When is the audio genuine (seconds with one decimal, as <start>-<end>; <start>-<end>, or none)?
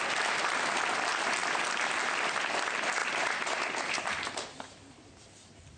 3.0-4.9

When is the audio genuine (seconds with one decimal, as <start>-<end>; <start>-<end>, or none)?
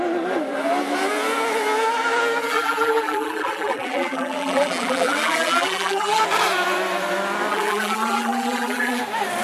0.0-2.4; 6.2-7.5; 9.0-9.4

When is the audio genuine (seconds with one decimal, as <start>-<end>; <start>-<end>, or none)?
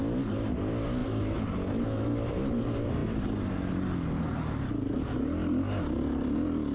0.0-6.7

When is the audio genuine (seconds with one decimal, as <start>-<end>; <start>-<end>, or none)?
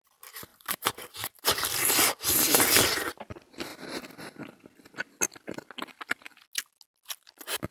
0.0-0.5; 2.6-7.7